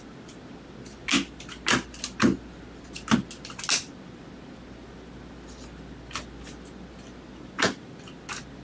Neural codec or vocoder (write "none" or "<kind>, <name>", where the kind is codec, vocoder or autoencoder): none